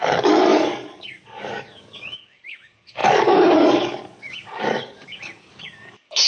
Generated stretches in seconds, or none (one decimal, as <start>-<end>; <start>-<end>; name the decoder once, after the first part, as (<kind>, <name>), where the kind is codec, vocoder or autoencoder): 0.0-6.3 (codec, DAC)